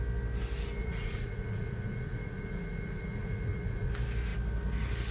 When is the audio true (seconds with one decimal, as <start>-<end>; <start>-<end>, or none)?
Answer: 0.0-0.8; 3.9-5.1